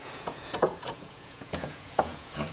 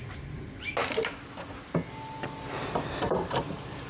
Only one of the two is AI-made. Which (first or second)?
first